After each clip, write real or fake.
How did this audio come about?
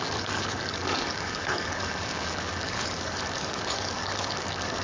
fake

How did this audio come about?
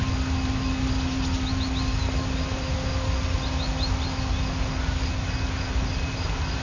real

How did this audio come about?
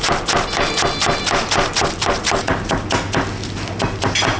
real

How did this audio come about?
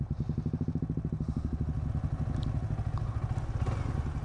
real